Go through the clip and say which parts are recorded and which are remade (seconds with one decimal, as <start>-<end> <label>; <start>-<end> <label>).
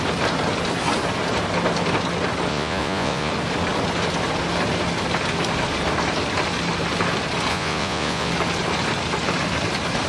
0.0-2.5 recorded; 2.5-3.3 remade; 3.3-7.5 recorded; 7.5-8.3 remade; 8.3-10.1 recorded